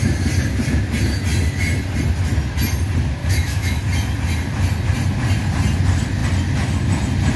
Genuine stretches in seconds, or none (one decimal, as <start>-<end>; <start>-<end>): 0.0-3.2; 3.8-7.4